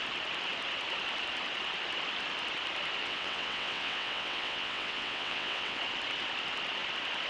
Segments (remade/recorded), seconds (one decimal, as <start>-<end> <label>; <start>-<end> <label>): 0.0-3.0 recorded; 3.0-5.8 remade; 5.8-7.3 recorded